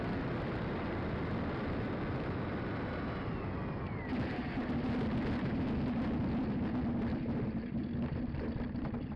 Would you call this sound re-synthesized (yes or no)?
no